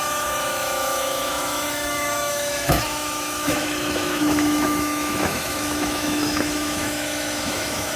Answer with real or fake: fake